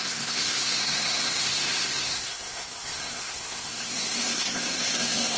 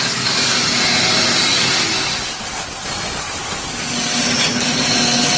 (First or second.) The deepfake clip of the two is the first